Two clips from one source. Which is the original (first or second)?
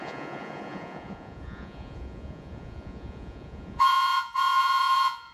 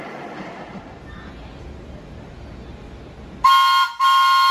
second